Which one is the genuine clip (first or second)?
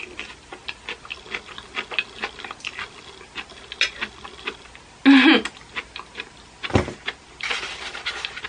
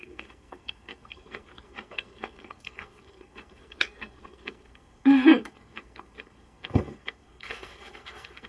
first